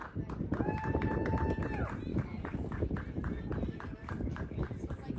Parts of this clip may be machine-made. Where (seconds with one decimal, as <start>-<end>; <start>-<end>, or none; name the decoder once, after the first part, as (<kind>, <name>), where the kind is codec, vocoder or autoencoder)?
2.1-2.8 (codec, DAC); 4.0-4.6